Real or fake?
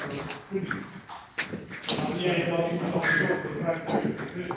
real